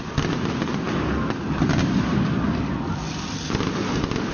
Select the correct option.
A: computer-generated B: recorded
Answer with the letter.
B